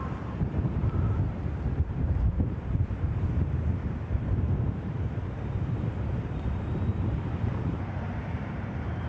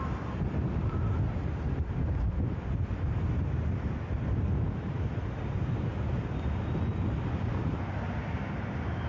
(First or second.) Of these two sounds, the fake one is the first